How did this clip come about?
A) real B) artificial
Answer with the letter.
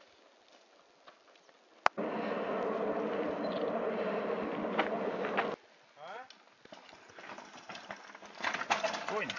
A